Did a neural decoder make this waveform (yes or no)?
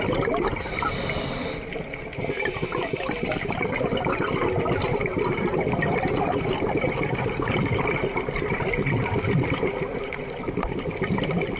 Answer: no